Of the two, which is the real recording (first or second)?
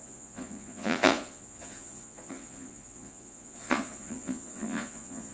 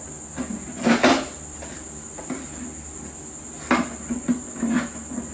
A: second